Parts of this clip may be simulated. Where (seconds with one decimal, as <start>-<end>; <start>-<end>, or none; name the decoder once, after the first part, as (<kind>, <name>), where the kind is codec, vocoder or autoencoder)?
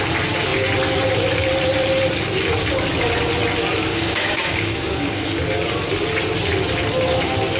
3.9-5.4 (codec, DAC)